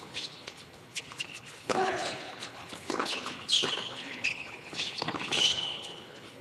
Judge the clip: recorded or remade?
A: remade